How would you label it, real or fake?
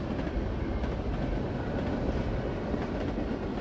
real